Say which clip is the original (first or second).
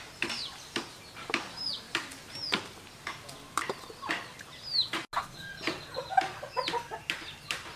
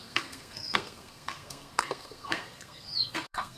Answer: first